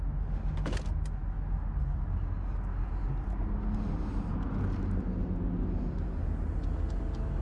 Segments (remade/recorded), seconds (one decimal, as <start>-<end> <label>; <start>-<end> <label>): 0.0-7.4 recorded